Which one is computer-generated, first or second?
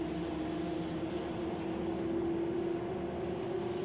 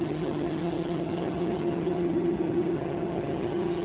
second